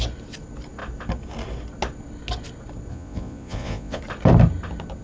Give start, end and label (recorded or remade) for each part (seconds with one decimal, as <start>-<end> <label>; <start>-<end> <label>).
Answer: 0.0-2.9 recorded; 2.9-4.0 remade; 4.0-5.0 recorded